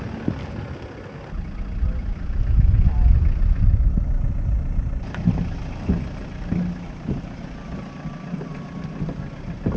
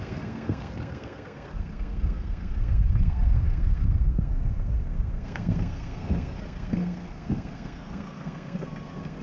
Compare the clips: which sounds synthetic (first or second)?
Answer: second